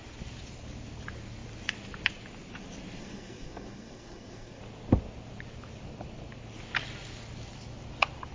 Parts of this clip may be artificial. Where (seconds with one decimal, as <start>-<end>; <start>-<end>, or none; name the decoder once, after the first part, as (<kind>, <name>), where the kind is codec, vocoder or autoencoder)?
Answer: 3.0-4.6 (codec, SNAC)